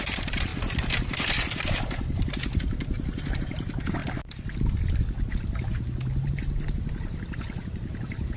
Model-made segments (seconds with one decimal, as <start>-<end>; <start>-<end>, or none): 0.0-0.5; 3.3-4.0; 5.3-5.7; 6.2-8.4